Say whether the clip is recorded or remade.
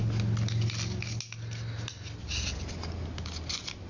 recorded